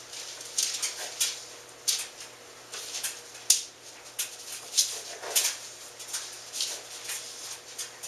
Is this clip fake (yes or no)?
no